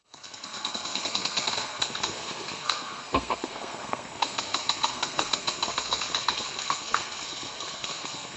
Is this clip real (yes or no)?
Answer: no